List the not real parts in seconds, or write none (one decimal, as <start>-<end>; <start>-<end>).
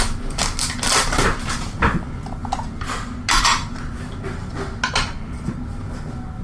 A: none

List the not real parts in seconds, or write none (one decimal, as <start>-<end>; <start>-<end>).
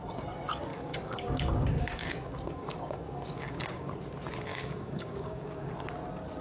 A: 0.7-3.9; 4.5-5.7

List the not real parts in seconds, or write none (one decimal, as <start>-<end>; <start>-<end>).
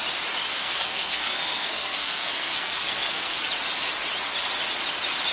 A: 0.5-3.5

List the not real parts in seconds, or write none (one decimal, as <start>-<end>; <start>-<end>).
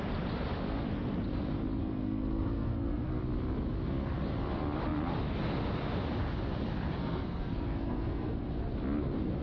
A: 1.8-3.2; 7.0-8.5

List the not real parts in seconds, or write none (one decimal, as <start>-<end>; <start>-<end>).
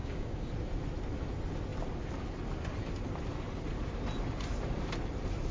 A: 0.0-0.5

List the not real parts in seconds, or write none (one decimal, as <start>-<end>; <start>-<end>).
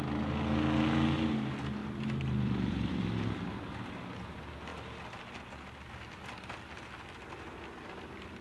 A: 1.8-2.9; 4.7-5.9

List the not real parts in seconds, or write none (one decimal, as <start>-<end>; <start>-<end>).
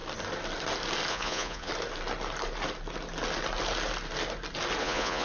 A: 1.1-1.7; 4.8-5.2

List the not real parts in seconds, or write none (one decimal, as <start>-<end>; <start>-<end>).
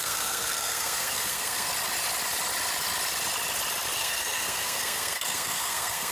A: 0.0-1.7; 4.0-6.1